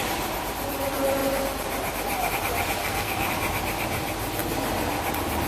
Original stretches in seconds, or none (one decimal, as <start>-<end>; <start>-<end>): 0.0-2.8; 3.3-5.5